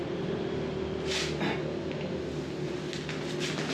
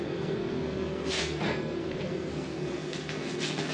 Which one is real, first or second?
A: first